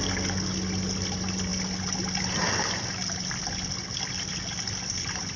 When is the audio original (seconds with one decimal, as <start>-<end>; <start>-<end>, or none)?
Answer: 0.0-5.4